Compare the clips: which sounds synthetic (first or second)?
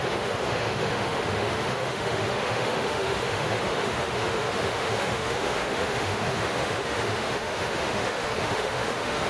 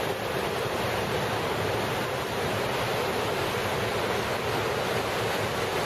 first